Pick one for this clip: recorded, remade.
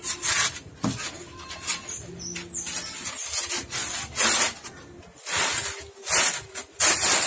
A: recorded